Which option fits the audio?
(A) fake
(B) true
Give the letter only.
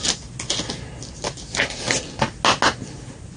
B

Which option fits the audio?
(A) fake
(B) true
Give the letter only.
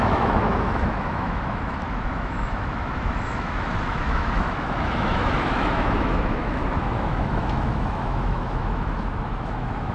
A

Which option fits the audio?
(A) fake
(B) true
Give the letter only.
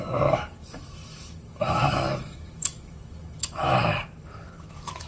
A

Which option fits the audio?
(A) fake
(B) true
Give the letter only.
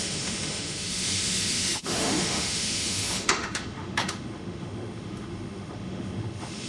A